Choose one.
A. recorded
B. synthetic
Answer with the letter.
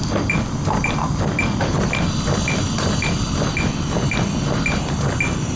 A